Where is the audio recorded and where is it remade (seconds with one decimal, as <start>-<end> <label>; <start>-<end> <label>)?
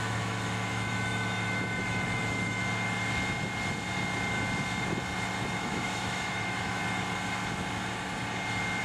0.0-2.6 remade; 2.6-5.6 recorded; 5.6-6.8 remade; 6.8-8.8 recorded